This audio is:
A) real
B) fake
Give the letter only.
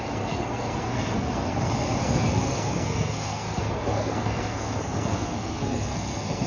B